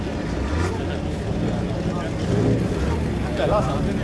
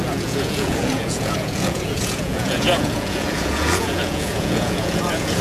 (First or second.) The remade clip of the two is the second